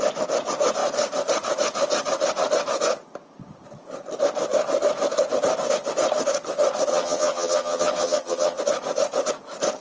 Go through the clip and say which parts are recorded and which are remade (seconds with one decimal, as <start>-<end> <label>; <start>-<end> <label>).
0.0-6.9 recorded; 6.9-8.6 remade; 8.6-9.8 recorded